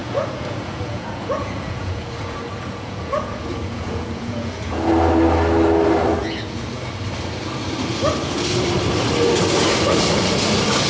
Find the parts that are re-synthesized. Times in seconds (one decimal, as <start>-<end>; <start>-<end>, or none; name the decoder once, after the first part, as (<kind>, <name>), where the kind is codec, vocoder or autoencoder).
0.0-4.9 (vocoder, Vocos); 6.2-6.8

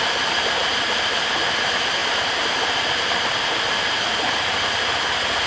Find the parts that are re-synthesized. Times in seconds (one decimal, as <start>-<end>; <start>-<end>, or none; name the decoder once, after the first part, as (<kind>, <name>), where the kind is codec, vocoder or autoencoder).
none

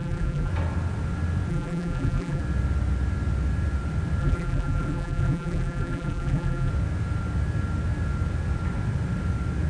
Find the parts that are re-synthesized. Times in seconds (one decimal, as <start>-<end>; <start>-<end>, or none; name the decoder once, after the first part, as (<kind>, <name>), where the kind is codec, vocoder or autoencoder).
0.0-0.5 (vocoder, BigVGAN v2); 1.5-2.4; 4.2-6.7